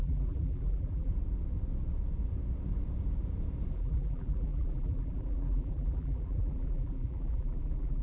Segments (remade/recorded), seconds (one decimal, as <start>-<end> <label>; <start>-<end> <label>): 0.0-1.1 remade; 1.1-3.7 recorded; 3.7-8.0 remade